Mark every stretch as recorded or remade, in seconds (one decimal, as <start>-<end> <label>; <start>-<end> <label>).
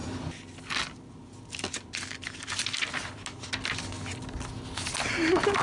0.0-5.6 recorded